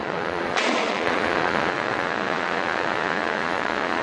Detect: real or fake fake